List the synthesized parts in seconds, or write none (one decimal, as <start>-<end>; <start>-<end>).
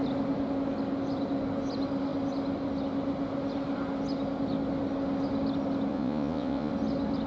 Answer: 5.9-6.7